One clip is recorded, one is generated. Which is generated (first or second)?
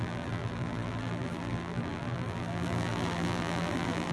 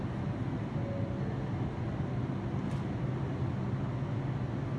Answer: first